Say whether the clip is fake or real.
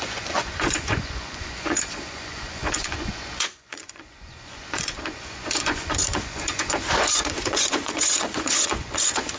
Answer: fake